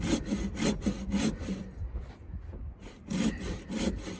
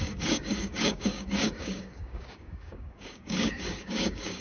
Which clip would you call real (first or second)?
first